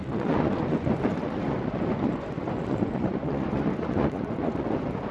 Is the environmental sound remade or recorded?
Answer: remade